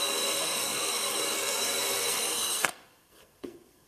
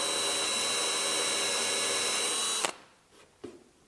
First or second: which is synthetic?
first